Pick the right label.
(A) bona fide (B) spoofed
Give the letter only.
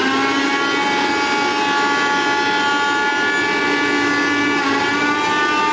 A